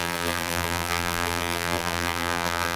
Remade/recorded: remade